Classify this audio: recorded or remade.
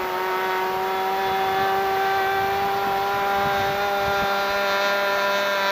recorded